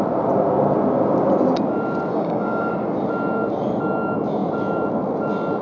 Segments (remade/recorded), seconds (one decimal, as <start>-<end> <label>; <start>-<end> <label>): 0.0-2.1 recorded; 2.1-2.7 remade; 2.7-5.6 recorded